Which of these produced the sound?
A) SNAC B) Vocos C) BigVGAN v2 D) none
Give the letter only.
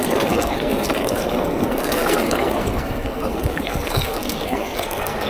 A